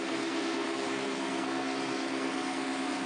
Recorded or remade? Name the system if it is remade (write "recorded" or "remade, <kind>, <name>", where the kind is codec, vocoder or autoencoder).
remade, codec, SNAC